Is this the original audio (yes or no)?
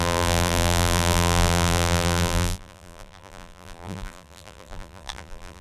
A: no